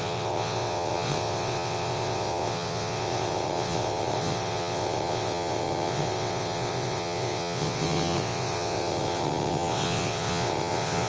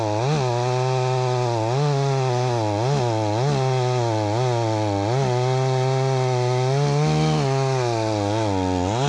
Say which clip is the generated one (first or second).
first